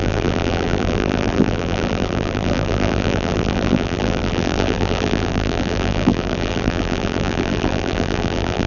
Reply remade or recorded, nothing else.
remade